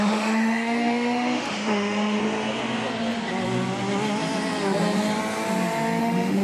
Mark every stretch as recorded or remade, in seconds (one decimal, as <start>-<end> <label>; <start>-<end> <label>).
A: 0.0-2.2 remade; 2.2-6.0 recorded; 6.0-6.4 remade